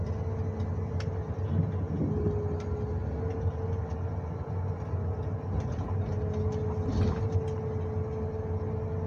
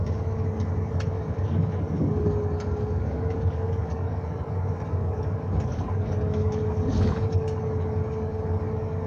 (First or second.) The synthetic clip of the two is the second